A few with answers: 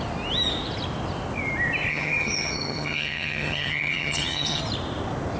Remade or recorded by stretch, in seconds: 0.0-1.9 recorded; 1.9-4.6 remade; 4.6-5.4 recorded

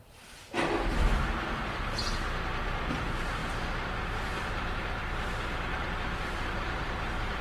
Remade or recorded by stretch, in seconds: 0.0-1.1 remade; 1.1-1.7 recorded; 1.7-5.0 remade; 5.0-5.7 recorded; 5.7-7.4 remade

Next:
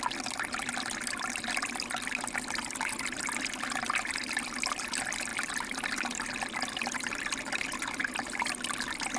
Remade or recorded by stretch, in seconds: 0.0-5.3 recorded; 5.3-7.2 remade; 7.2-8.0 recorded; 8.0-9.2 remade